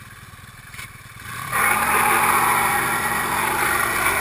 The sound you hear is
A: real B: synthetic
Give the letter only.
A